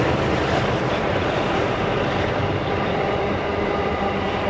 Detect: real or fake fake